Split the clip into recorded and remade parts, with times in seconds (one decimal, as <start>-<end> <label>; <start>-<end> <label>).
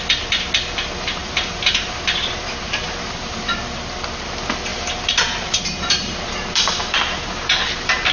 0.0-1.2 recorded; 1.2-3.6 remade; 3.6-4.7 recorded; 4.7-8.1 remade